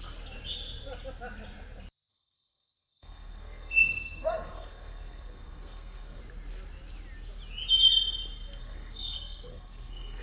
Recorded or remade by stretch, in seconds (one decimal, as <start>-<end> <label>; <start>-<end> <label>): 0.0-2.1 recorded; 2.1-6.2 remade; 6.2-8.6 recorded; 8.6-10.2 remade